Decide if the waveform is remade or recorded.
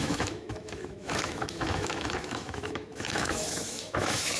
remade